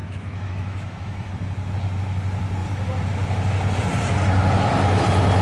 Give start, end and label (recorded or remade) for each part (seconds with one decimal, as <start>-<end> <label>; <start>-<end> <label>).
0.0-1.3 remade; 1.3-5.4 recorded